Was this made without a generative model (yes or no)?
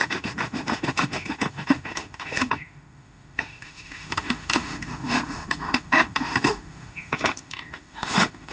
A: no